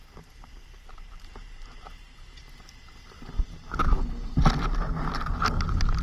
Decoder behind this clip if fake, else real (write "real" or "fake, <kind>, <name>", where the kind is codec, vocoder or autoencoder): real